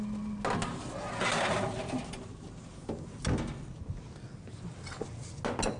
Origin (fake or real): real